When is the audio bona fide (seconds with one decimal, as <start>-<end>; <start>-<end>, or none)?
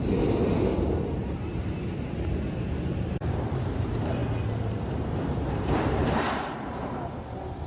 0.4-3.1; 4.2-5.5